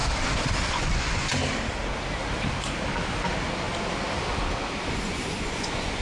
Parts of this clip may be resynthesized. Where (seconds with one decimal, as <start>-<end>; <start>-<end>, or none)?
0.7-1.3; 4.9-6.0